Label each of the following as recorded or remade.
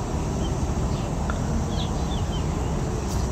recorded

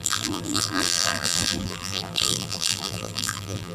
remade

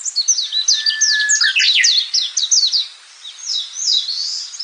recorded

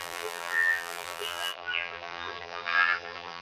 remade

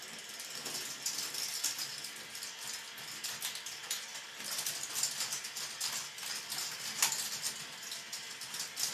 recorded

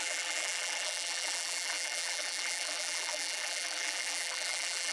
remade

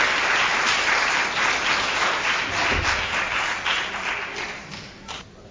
recorded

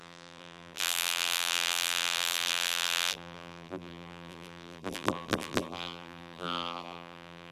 remade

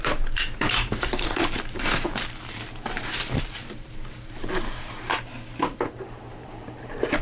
remade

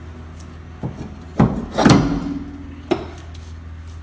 recorded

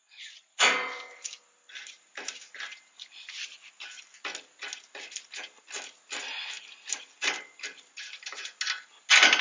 recorded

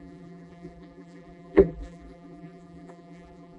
remade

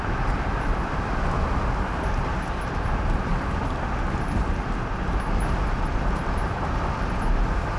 recorded